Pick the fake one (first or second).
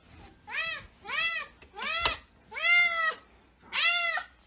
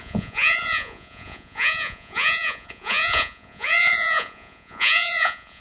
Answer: second